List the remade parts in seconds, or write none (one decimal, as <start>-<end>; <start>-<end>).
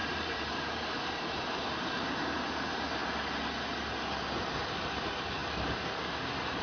0.0-3.0; 4.5-6.6